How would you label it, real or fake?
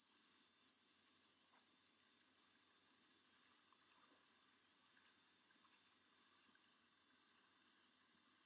real